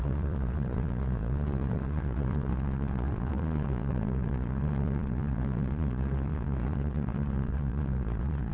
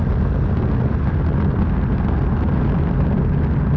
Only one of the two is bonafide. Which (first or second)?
second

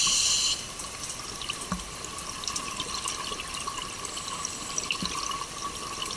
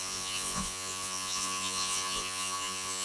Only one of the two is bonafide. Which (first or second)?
first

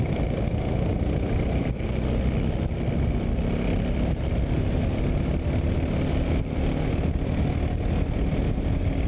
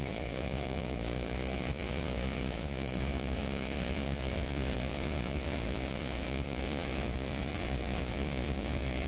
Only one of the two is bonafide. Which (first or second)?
first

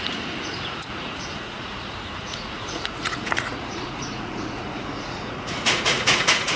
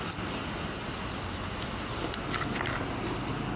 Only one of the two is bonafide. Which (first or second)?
second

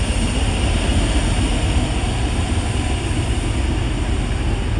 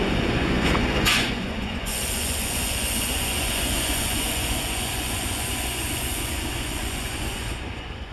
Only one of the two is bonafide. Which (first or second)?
first